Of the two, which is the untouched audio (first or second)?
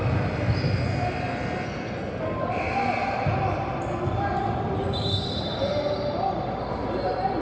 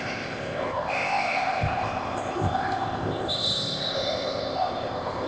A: first